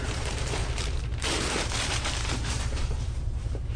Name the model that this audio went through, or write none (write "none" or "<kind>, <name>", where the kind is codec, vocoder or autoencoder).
vocoder, BigVGAN v2